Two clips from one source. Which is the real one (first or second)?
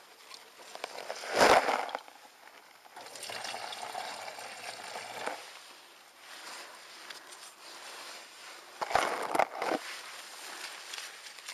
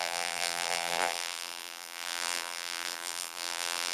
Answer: first